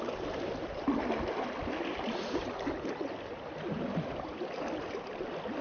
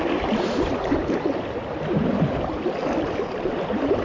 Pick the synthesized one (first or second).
second